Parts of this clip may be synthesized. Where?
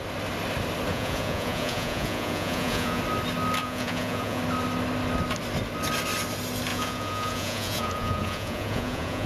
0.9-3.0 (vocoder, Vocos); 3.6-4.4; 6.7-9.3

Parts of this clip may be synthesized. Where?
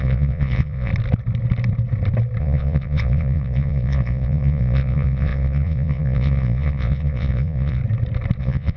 0.0-0.9 (vocoder, Vocos); 2.4-7.8; 8.4-8.8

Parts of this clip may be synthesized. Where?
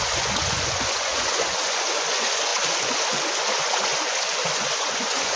0.0-5.4 (vocoder, Vocos)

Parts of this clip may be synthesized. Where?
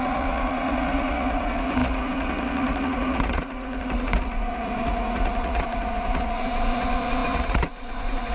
0.0-8.3 (vocoder, Vocos)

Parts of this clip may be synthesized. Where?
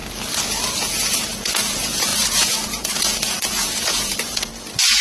0.9-4.5 (vocoder, Vocos)